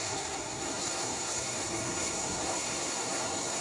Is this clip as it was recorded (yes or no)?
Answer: no